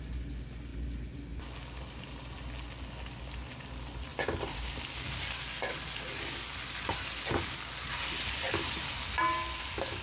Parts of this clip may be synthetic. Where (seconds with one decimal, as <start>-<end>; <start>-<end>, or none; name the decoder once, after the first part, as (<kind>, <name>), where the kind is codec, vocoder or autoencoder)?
4.1-4.7 (vocoder, BigVGAN v2)